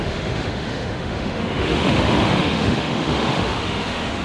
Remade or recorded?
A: remade